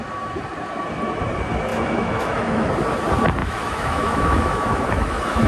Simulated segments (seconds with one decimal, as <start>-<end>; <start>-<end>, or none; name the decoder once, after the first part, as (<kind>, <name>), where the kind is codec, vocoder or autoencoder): 1.7-2.7 (autoencoder, DAC-VAE); 3.4-5.5